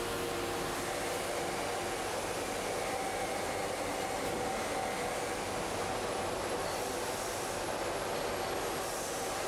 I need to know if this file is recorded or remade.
recorded